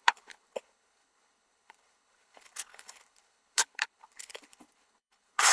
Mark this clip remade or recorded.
remade